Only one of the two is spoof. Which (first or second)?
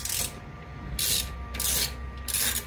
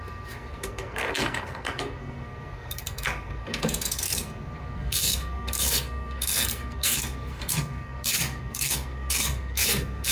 second